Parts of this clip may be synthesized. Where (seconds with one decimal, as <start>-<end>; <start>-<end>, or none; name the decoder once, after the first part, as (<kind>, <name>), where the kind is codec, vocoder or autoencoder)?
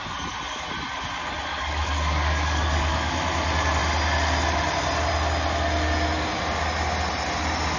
1.5-3.1 (codec, DAC)